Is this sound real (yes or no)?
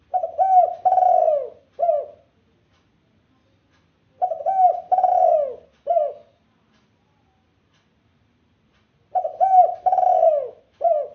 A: yes